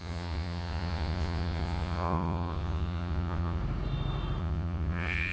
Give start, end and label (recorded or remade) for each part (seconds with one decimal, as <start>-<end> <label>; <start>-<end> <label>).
0.0-3.6 remade; 3.6-4.4 recorded; 4.4-5.3 remade